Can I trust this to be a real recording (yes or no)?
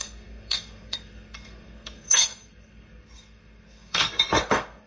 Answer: no